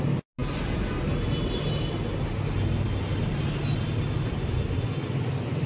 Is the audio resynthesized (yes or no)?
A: no